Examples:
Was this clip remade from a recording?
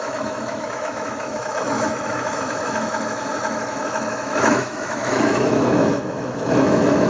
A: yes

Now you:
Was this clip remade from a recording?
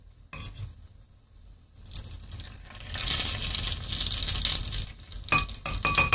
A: no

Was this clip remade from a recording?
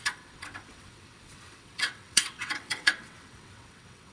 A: yes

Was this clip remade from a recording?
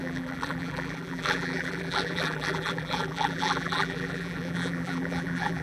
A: yes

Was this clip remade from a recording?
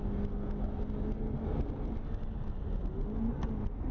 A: no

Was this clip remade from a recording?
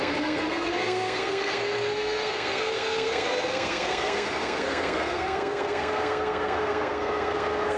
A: yes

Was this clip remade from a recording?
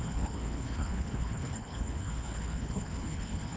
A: yes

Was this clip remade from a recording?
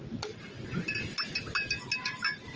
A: no